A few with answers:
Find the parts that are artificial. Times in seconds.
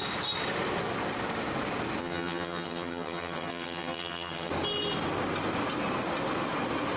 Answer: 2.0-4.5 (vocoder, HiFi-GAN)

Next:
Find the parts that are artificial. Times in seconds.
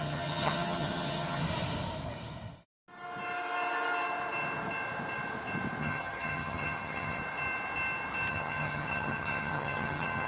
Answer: 0.0-1.4 (vocoder, HiFi-GAN); 5.8-7.2; 8.3-10.3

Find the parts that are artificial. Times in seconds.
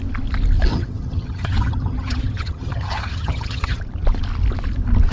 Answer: 0.7-3.8 (vocoder, HiFi-GAN)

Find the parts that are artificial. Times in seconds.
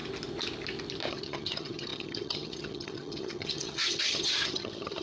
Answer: 1.1-5.0 (vocoder, HiFi-GAN)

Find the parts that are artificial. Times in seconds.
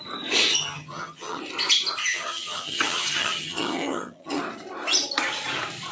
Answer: 0.5-1.4 (vocoder, HiFi-GAN); 2.0-4.4